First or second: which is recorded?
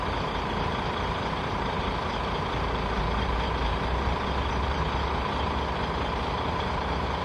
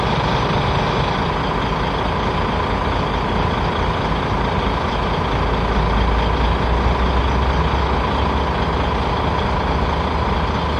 second